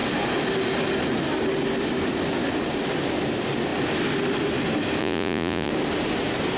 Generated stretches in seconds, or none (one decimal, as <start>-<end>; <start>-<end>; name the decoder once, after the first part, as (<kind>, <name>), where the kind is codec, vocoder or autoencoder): 5.0-5.7 (vocoder, Vocos)